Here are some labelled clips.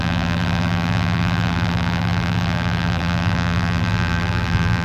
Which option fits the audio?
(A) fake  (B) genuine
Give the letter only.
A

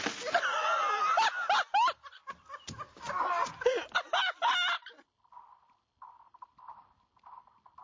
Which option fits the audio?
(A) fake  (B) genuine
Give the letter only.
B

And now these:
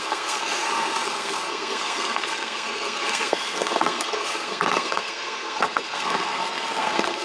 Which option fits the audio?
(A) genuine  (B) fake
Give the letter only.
B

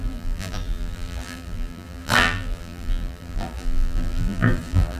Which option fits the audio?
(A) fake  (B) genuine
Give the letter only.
A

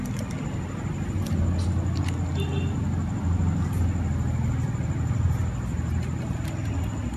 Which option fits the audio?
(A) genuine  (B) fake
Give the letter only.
A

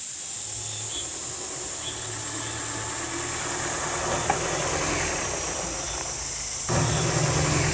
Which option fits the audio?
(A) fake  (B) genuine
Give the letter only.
B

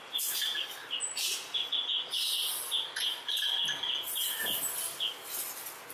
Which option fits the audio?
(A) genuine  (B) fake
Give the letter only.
A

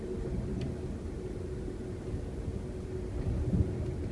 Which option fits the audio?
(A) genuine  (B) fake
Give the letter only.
A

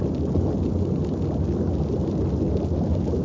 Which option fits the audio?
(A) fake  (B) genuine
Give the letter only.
B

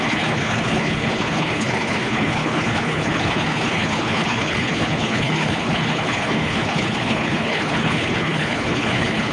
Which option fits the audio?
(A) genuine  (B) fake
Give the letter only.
B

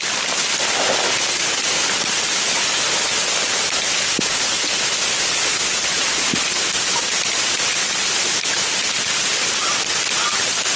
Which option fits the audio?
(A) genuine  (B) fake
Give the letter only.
A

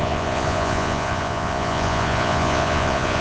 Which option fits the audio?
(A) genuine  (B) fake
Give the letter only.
B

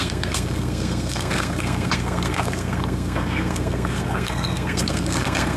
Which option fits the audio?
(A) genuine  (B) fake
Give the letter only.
B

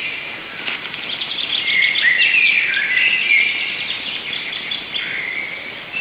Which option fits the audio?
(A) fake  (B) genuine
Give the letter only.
B